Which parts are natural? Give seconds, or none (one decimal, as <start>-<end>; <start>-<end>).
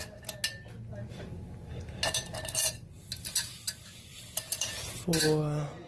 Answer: 0.0-5.9